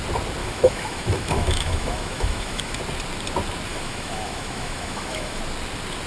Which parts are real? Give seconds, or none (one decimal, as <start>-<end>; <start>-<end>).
0.0-0.4; 2.8-3.7; 5.4-6.1